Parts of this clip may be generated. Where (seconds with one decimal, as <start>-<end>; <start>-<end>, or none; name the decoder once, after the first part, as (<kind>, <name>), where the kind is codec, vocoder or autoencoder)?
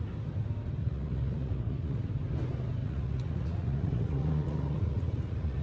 0.8-2.1 (vocoder, Vocos); 2.8-5.6